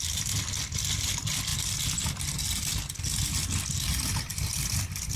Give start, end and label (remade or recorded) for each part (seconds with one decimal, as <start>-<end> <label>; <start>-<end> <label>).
0.0-4.3 recorded; 4.3-5.2 remade